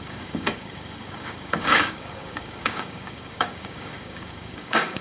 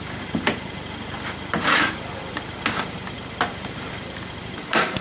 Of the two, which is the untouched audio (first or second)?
second